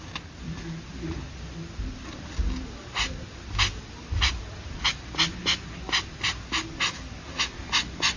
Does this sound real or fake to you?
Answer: real